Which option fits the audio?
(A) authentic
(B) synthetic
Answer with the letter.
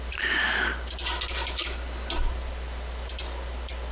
A